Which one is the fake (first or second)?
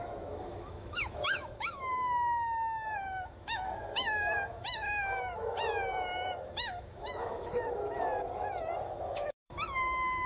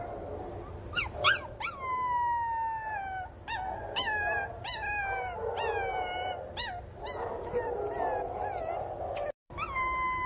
first